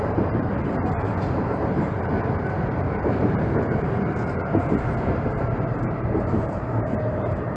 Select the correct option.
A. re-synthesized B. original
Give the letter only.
A